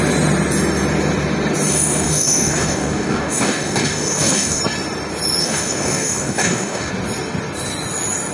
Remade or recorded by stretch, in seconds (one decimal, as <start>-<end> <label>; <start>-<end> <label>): 0.0-1.7 recorded; 1.7-4.6 remade; 4.6-5.4 recorded; 5.4-6.9 remade; 6.9-8.3 recorded